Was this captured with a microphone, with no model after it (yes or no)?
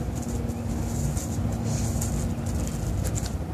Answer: yes